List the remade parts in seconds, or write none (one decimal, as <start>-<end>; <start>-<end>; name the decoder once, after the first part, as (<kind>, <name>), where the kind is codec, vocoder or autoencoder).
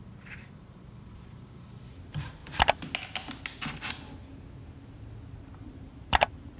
0.0-2.4 (vocoder, BigVGAN v2); 5.5-6.6